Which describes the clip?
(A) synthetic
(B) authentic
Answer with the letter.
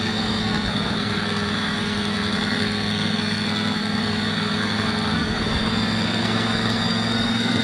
A